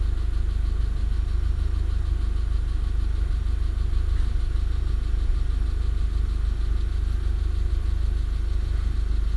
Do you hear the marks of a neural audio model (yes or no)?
no